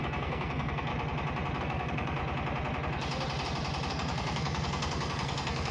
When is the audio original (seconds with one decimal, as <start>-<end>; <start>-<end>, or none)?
0.9-1.6; 2.2-3.9